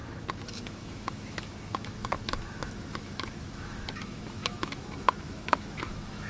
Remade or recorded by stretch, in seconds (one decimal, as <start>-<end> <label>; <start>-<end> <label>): 0.0-6.3 remade